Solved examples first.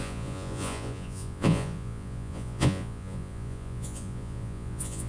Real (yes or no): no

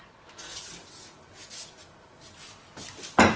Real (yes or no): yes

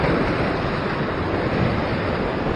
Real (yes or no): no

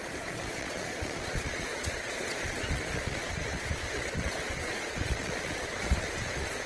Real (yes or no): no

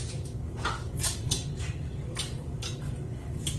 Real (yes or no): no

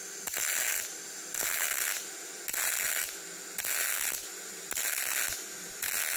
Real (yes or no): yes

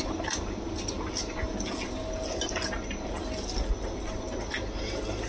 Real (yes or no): yes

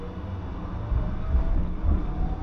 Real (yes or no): yes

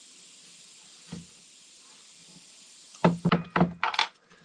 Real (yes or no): yes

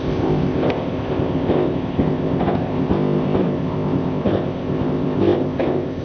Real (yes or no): no